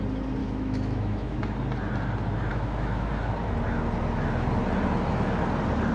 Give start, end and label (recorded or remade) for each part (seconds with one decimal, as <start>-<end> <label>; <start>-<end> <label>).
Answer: 0.0-0.4 recorded; 0.4-1.4 remade; 1.4-2.5 recorded; 2.5-3.1 remade; 3.1-5.9 recorded